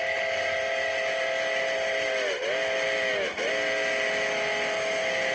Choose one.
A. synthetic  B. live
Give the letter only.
B